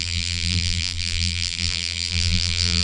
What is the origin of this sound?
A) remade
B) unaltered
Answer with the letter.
A